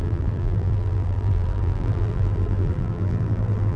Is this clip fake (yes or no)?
yes